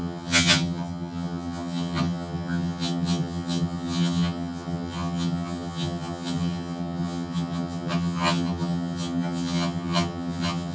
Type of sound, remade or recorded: remade